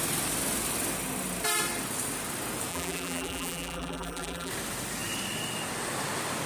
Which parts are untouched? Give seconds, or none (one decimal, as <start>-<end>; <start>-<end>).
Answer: 0.0-2.7; 4.5-6.5